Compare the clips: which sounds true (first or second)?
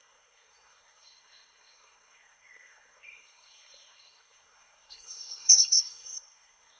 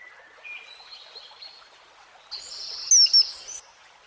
second